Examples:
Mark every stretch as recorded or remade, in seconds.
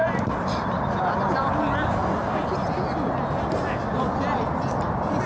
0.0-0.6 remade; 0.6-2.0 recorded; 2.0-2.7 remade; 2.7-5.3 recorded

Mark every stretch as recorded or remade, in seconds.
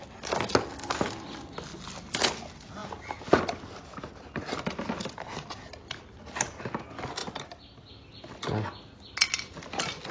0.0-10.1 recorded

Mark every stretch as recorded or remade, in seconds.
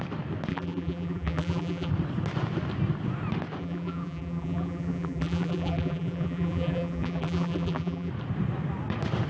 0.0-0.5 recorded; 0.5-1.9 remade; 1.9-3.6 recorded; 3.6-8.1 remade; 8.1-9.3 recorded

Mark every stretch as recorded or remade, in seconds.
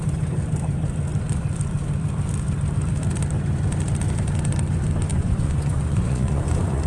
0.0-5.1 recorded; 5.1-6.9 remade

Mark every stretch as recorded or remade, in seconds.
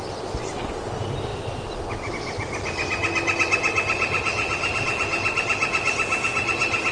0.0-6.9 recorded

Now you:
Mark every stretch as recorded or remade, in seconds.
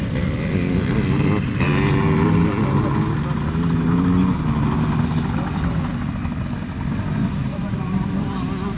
0.0-8.8 recorded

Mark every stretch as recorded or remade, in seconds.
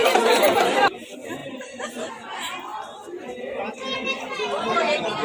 0.0-0.7 remade; 0.7-1.4 recorded; 1.4-1.9 remade; 1.9-5.2 recorded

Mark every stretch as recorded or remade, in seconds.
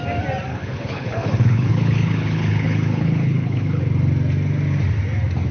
0.0-0.5 recorded; 0.5-3.8 remade; 3.8-5.5 recorded